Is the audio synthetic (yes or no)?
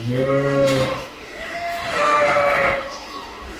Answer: yes